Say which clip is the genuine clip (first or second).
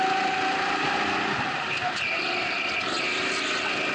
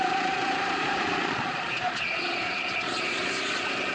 first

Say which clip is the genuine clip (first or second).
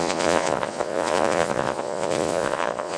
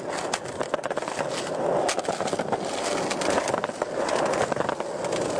second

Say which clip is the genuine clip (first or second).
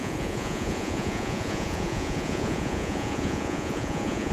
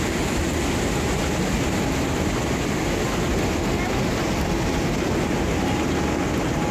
second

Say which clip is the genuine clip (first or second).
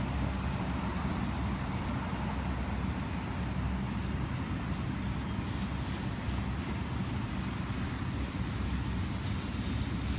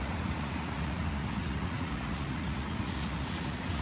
first